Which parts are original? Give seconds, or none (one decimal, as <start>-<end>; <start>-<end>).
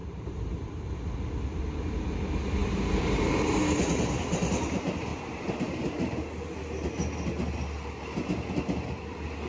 1.1-2.6; 3.1-5.1; 6.1-9.5